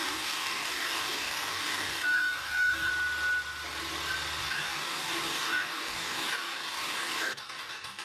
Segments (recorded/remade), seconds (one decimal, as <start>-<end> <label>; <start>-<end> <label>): 0.0-2.9 remade; 2.9-4.4 recorded; 4.4-8.0 remade